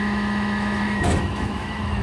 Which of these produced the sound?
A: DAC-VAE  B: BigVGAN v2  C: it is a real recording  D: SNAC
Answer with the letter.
A